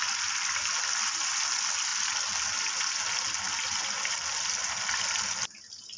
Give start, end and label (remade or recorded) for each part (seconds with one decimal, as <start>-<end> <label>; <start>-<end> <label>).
0.0-6.0 recorded

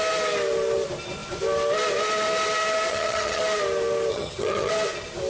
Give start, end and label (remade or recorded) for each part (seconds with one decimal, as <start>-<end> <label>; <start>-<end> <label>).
0.0-2.9 recorded; 2.9-3.4 remade; 3.4-4.1 recorded; 4.1-4.7 remade; 4.7-5.3 recorded

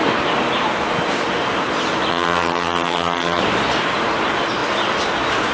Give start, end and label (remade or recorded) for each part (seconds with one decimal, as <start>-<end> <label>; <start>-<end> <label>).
0.0-2.1 recorded; 2.1-3.4 remade; 3.4-5.5 recorded

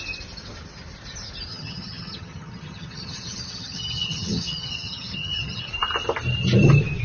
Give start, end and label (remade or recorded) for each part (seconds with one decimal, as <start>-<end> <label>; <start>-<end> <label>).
0.0-1.5 recorded; 1.5-5.7 remade; 5.7-7.0 recorded

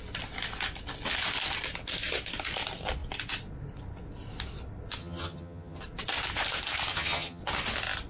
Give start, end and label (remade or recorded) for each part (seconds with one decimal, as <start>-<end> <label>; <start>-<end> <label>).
0.0-5.0 recorded; 5.0-5.8 remade; 5.8-6.9 recorded; 6.9-7.4 remade; 7.4-8.1 recorded

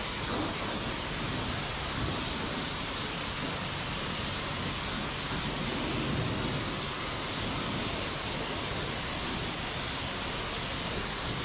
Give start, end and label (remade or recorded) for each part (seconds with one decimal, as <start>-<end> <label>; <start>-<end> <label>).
0.0-11.4 recorded

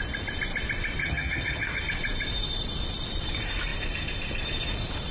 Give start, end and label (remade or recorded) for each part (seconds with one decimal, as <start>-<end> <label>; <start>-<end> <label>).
0.0-1.0 recorded; 1.0-1.8 remade; 1.8-5.1 recorded

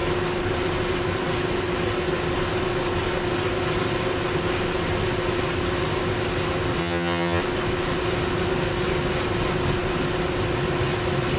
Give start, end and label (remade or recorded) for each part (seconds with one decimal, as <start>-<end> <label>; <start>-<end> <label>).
0.0-6.8 recorded; 6.8-7.4 remade; 7.4-11.4 recorded